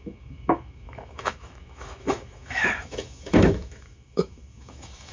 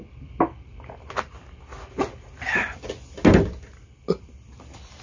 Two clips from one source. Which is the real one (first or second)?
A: second